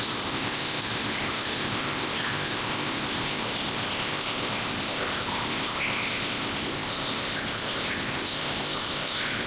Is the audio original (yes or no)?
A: no